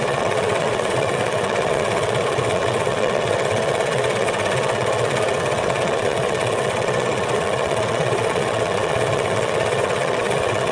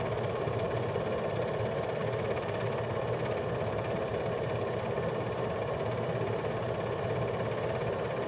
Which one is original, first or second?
second